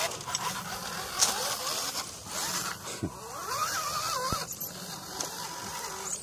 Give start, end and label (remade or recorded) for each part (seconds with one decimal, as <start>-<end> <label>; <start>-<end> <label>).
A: 0.0-6.2 recorded